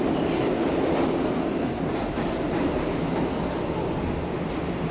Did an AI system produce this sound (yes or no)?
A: no